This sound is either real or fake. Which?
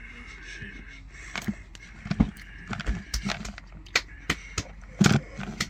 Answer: real